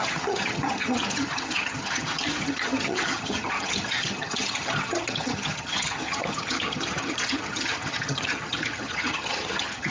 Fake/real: fake